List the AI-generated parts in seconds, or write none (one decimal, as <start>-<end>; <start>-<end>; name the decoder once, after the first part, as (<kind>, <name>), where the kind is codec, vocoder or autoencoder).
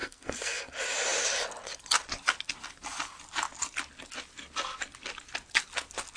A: 0.0-0.7 (codec, SNAC)